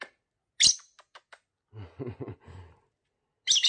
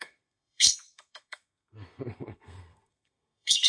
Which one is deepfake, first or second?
second